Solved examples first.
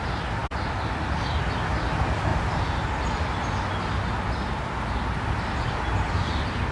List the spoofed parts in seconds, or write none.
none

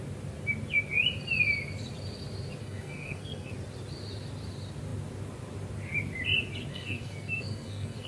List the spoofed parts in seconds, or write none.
2.6-3.5 (codec, SNAC); 6.7-8.1

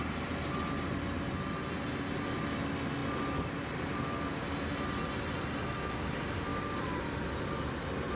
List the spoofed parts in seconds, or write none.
none

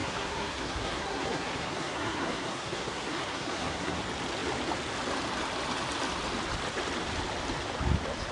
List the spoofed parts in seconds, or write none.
0.0-4.0 (codec, SNAC)